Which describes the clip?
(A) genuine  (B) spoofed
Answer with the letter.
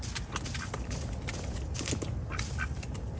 A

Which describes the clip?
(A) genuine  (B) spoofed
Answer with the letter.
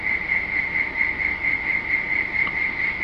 A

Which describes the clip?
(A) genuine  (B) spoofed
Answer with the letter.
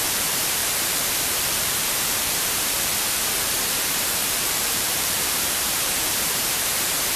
B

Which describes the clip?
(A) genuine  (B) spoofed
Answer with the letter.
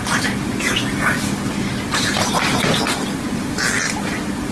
A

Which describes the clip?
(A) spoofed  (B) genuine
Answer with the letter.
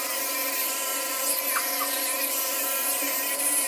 B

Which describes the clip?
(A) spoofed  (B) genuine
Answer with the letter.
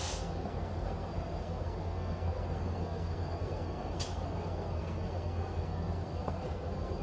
A